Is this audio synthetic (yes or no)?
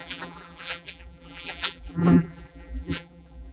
yes